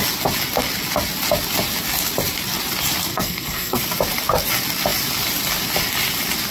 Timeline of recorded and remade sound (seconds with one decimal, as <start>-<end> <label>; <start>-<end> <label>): 0.0-3.1 recorded; 3.1-3.8 remade; 3.8-6.5 recorded